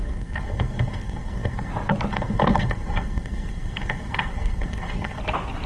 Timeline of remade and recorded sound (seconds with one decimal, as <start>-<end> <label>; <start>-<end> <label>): 0.0-1.7 remade; 1.7-2.1 recorded; 2.1-5.2 remade; 5.2-5.7 recorded

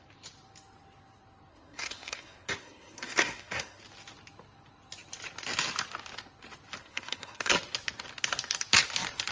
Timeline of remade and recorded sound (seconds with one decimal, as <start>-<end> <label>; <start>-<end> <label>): 0.0-1.5 recorded; 1.5-3.8 remade; 3.8-6.8 recorded; 6.8-7.5 remade; 7.5-9.3 recorded

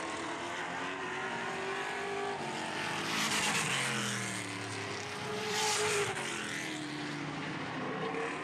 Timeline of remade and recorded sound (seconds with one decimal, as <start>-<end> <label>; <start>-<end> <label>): 0.0-5.3 recorded; 5.3-6.3 remade; 6.3-8.4 recorded

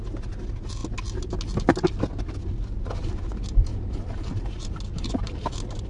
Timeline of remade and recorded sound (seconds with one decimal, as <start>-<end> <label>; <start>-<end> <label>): 0.0-3.7 recorded; 3.7-4.3 remade; 4.3-4.9 recorded; 4.9-5.4 remade; 5.4-5.9 recorded